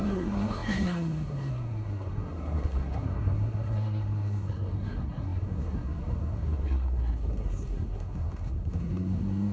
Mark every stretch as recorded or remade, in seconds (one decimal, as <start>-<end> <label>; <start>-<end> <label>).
0.0-9.5 remade